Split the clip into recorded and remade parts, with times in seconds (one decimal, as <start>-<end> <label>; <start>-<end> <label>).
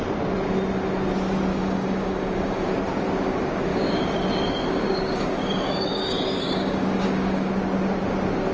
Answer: 0.0-1.5 recorded; 1.5-2.7 remade; 2.7-3.7 recorded; 3.7-7.5 remade; 7.5-8.5 recorded